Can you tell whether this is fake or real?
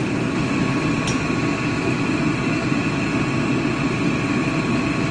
real